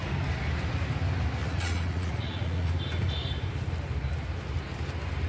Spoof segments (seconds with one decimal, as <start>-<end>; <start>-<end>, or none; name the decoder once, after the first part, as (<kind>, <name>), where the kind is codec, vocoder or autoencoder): 1.4-2.7 (vocoder, Vocos)